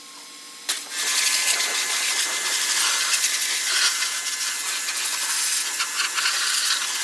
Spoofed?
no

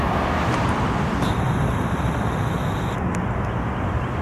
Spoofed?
no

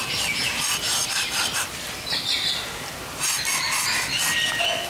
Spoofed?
no